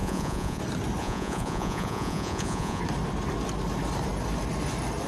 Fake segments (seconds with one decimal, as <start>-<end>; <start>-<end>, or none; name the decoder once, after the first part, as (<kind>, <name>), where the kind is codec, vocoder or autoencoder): 0.0-0.6 (vocoder, Vocos); 1.0-2.8